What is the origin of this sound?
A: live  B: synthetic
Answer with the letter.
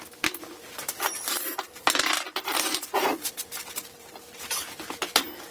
B